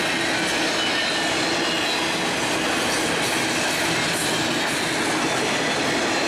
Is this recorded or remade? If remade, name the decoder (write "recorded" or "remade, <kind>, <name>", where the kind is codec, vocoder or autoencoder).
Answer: recorded